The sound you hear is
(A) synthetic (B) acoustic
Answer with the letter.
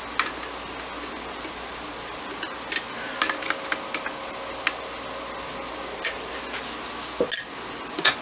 B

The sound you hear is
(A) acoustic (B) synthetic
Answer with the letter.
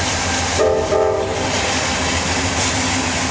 A